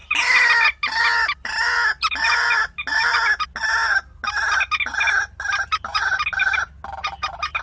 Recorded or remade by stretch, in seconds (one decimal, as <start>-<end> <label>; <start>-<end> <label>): 0.0-7.6 recorded

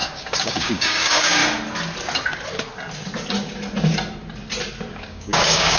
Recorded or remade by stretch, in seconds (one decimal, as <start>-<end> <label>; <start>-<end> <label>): 0.0-1.4 remade; 1.4-4.9 recorded; 4.9-5.8 remade

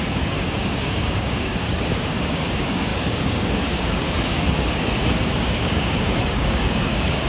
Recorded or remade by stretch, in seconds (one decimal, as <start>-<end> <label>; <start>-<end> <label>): 0.0-7.3 remade